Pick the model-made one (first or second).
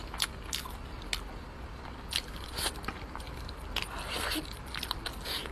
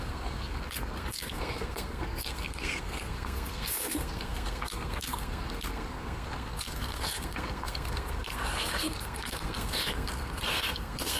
second